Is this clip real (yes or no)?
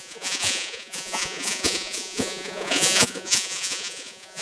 no